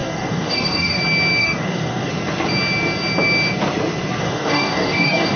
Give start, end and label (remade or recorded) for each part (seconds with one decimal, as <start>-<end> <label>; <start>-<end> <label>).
0.0-1.0 remade; 1.0-1.4 recorded; 1.4-2.1 remade; 2.1-4.2 recorded; 4.2-5.4 remade